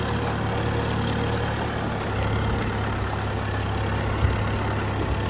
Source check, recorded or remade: recorded